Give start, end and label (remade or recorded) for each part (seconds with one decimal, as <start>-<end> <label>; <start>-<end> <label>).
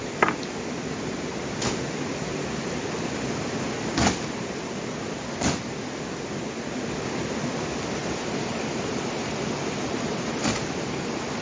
0.0-11.4 recorded